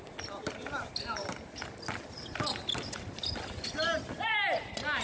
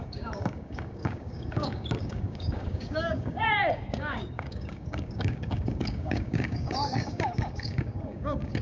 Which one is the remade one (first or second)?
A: second